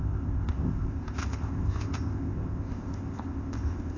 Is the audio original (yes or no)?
no